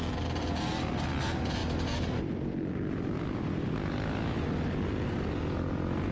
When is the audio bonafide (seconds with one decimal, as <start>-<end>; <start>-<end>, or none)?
0.0-6.1